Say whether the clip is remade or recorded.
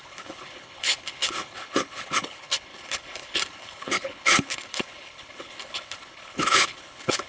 remade